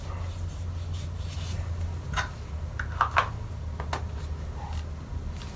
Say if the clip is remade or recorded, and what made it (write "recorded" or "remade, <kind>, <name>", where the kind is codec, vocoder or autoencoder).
recorded